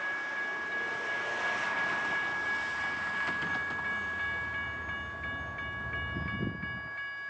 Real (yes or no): yes